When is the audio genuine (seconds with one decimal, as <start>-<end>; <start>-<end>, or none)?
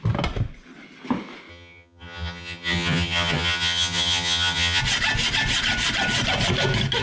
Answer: 0.0-1.5; 4.8-7.0